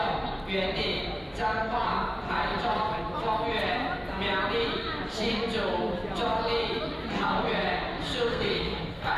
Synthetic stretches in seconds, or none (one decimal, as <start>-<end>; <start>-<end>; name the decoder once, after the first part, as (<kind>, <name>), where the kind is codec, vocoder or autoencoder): 8.3-9.2 (codec, SNAC)